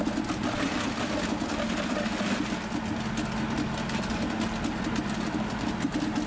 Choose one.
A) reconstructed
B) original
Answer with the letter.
B